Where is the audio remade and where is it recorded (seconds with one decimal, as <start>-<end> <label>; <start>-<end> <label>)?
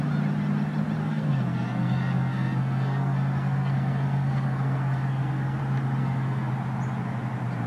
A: 0.0-1.0 recorded; 1.0-5.6 remade; 5.6-6.0 recorded; 6.0-6.5 remade; 6.5-7.7 recorded